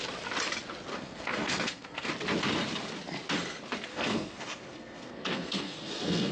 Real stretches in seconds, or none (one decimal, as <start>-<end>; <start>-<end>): 0.0-0.9; 2.1-3.9